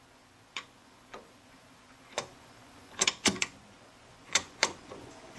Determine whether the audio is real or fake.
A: fake